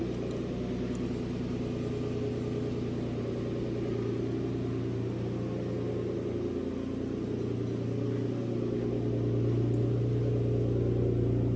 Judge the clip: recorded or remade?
recorded